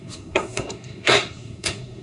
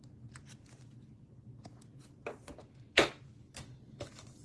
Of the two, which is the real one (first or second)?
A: second